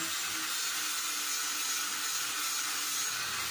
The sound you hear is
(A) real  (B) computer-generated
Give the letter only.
A